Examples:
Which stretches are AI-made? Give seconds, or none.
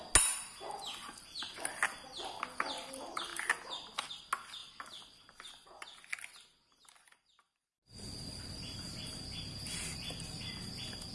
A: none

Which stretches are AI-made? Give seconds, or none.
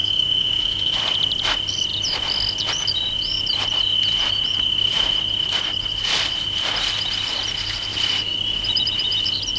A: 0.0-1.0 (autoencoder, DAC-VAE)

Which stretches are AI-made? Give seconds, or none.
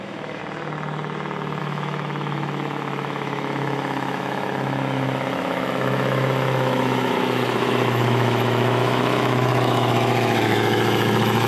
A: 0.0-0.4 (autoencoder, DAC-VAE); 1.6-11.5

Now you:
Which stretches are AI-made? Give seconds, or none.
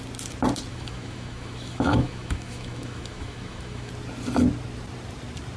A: 0.7-3.9 (autoencoder, DAC-VAE)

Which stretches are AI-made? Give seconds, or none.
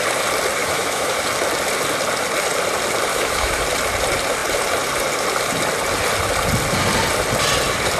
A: 0.6-1.2 (autoencoder, DAC-VAE); 3.1-3.6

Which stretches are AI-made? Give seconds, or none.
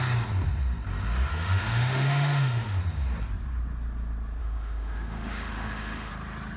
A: 1.3-2.8 (autoencoder, DAC-VAE); 4.4-6.1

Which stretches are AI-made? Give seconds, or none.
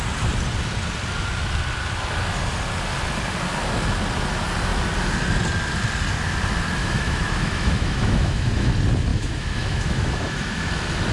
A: 6.8-8.7 (autoencoder, DAC-VAE); 9.1-10.7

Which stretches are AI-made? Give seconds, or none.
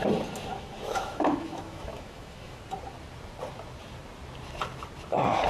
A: 0.5-2.6 (autoencoder, DAC-VAE)